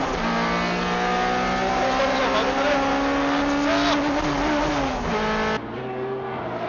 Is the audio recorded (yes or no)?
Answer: yes